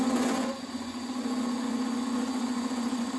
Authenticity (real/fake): fake